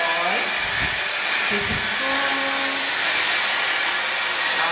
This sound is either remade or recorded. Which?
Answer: recorded